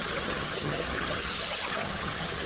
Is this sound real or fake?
fake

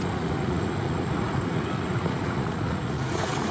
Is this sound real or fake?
fake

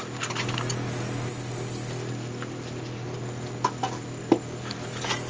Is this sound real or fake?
real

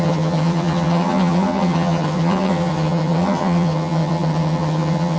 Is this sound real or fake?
fake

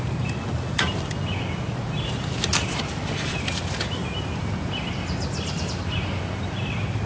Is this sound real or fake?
real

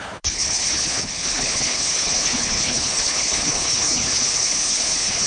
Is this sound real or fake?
fake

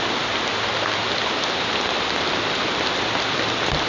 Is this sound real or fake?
real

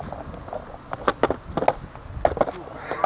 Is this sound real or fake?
real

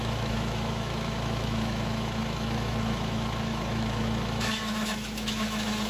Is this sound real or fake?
fake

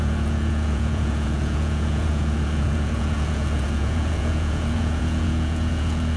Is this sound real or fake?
fake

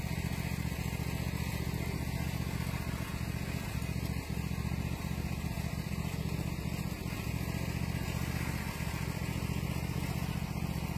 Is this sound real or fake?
real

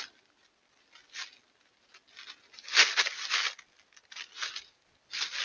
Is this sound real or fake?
real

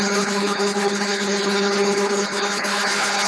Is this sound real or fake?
fake